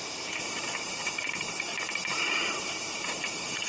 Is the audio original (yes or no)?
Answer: no